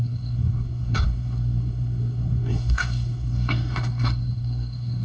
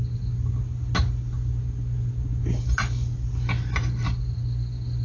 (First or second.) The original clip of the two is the second